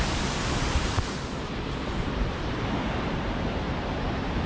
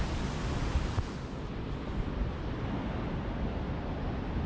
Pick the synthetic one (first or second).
first